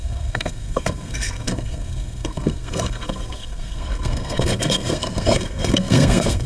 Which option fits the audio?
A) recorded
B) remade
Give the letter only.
B